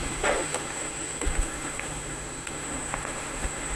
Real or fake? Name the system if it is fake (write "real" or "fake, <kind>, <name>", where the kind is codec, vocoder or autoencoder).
fake, autoencoder, DAC-VAE